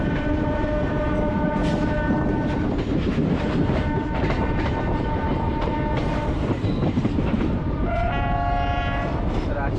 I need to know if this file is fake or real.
fake